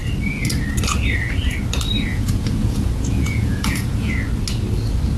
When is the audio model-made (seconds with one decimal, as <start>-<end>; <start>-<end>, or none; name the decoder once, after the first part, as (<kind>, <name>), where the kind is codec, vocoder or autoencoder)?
2.1-4.1 (vocoder, Vocos)